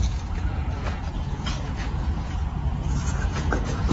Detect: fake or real fake